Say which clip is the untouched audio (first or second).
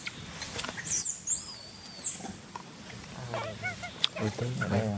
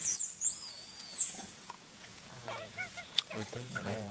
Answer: first